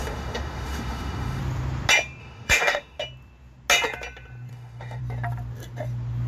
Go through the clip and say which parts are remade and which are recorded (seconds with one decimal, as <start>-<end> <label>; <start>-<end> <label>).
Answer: 0.0-1.4 remade; 1.4-2.2 recorded; 2.2-3.0 remade; 3.0-4.5 recorded; 4.5-5.0 remade; 5.0-6.3 recorded

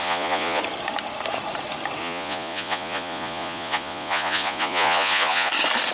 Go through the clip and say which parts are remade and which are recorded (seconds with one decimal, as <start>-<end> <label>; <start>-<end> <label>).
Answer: 0.0-0.6 remade; 0.6-2.0 recorded; 2.0-5.5 remade; 5.5-5.9 recorded

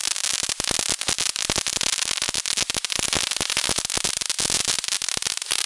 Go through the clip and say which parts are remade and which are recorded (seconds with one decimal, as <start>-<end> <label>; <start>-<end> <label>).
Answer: 0.0-5.7 recorded

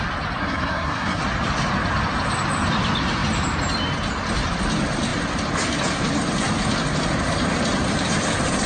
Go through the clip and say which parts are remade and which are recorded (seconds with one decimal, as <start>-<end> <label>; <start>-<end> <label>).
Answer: 0.0-0.4 recorded; 0.4-1.2 remade; 1.2-8.7 recorded

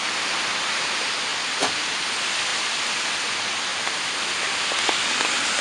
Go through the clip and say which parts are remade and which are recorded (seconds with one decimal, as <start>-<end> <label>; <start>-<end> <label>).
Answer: 0.0-1.3 remade; 1.3-1.9 recorded; 1.9-2.5 remade; 2.5-3.1 recorded; 3.1-5.6 remade